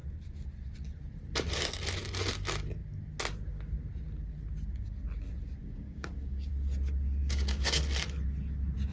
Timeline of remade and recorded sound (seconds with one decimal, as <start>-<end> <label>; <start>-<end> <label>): 0.0-5.6 recorded; 5.6-6.5 remade; 6.5-7.2 recorded; 7.2-7.8 remade; 7.8-8.9 recorded